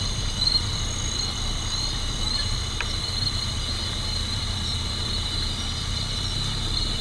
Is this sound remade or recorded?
remade